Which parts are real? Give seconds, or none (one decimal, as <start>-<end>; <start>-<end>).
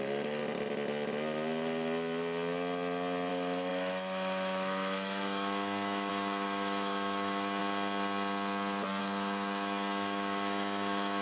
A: 0.4-3.3; 7.6-9.0